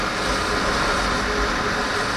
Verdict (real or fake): real